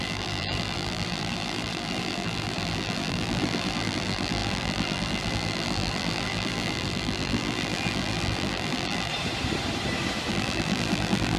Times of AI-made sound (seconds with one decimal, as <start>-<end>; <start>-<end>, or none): 0.0-9.1; 10.3-11.4

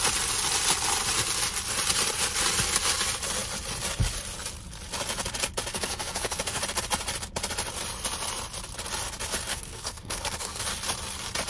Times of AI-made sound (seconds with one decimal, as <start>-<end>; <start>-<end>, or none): 5.7-6.6; 9.5-10.6

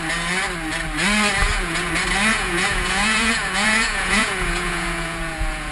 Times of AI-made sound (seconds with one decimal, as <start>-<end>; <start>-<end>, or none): 1.4-1.9; 2.3-5.7

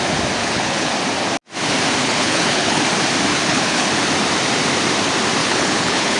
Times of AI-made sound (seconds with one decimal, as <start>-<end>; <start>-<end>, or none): 0.4-0.9; 2.0-2.8; 3.3-3.9; 5.4-6.2

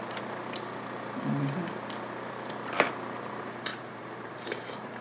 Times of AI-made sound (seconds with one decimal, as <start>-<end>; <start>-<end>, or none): 3.7-5.0

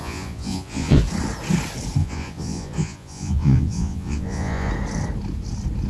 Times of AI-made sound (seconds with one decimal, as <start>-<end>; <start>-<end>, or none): 0.0-1.0; 2.0-4.7

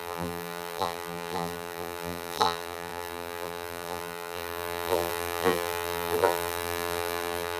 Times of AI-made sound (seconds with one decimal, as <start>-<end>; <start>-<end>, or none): 0.0-7.6

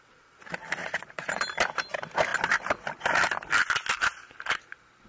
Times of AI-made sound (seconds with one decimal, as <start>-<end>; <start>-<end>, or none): 0.8-1.4